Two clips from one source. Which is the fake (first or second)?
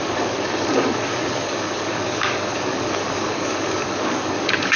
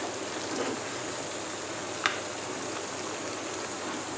first